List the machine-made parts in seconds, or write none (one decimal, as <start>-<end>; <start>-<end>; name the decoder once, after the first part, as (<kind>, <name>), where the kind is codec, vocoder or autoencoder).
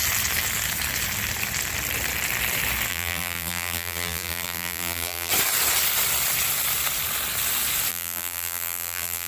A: 2.9-5.3 (vocoder, BigVGAN v2); 7.9-9.3